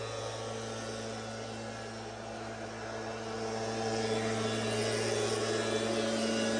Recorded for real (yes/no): yes